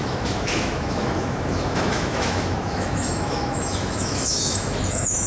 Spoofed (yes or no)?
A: yes